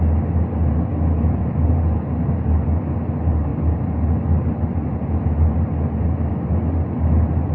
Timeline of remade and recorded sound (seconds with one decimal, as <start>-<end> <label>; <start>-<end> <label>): 0.0-7.5 recorded